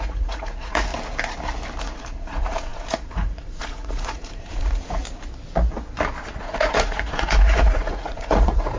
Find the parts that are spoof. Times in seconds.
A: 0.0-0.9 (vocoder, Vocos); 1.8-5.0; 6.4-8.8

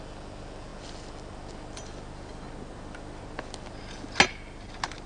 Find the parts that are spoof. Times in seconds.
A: none

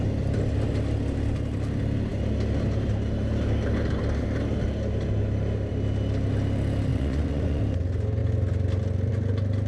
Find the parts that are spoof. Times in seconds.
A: 6.9-7.6 (vocoder, Vocos)

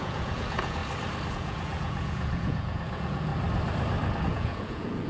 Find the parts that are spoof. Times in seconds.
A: 0.0-0.8 (vocoder, Vocos); 1.3-3.3; 4.2-5.1

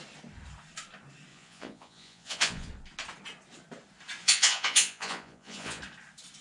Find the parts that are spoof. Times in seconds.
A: 1.3-2.7 (vocoder, Vocos); 4.2-5.8

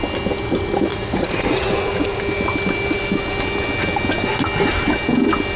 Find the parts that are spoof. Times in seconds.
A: 0.9-1.7 (vocoder, Vocos)

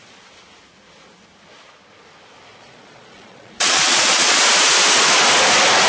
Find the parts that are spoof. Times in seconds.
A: 2.5-4.4 (vocoder, Vocos)

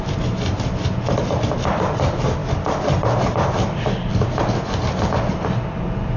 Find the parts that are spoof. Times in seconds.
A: none